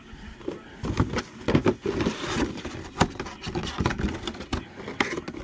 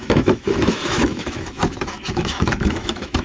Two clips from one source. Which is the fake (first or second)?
second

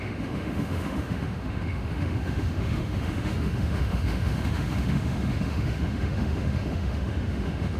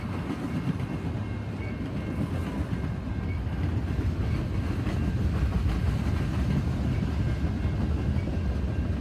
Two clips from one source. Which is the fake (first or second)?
first